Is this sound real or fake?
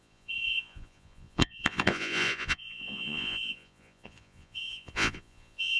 fake